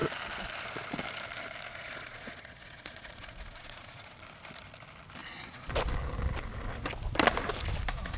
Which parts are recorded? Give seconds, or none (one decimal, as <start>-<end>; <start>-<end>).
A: 0.0-1.7; 4.2-5.2; 5.7-8.2